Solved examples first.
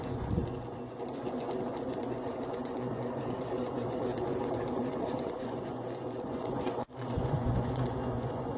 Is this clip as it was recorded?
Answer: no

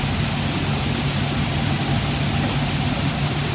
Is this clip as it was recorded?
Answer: yes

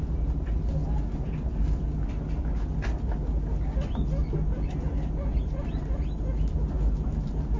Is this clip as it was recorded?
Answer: yes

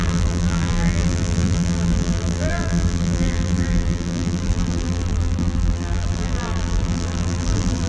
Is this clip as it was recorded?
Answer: no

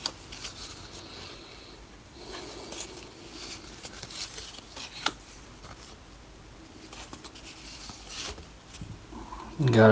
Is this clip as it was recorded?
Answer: yes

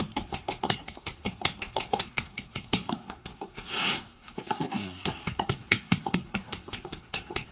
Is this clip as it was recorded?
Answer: no